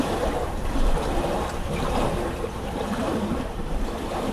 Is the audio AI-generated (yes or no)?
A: yes